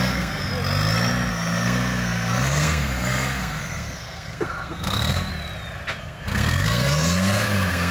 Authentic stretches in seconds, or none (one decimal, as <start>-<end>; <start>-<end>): 0.5-1.3; 5.3-6.0

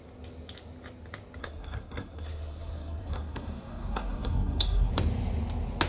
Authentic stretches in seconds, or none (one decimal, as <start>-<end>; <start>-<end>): 0.0-1.4; 4.9-5.9